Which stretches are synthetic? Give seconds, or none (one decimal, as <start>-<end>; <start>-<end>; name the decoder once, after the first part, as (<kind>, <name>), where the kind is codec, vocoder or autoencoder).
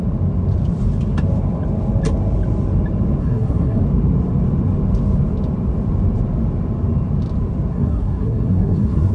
3.2-3.8 (codec, SNAC); 7.7-9.1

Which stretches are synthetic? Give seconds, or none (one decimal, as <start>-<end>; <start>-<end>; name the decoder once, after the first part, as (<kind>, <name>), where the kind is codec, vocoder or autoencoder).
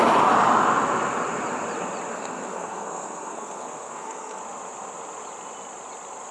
2.1-4.4 (codec, SNAC)